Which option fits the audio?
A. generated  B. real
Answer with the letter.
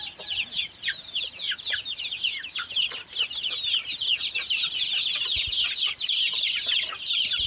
B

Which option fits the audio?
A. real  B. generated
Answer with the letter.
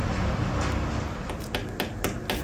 A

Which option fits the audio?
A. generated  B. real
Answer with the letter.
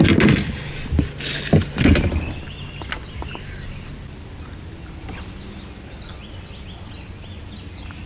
B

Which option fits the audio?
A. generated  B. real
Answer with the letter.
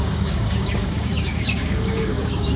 A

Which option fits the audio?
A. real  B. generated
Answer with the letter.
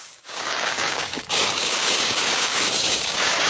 B